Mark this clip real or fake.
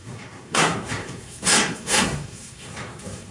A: fake